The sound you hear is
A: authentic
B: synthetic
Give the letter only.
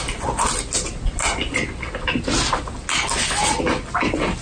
A